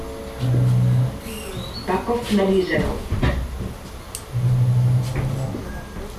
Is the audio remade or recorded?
recorded